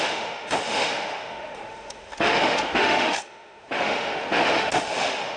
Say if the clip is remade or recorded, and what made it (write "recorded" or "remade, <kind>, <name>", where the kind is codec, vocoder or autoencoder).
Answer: remade, autoencoder, DAC-VAE